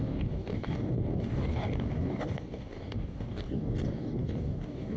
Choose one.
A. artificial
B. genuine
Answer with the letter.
A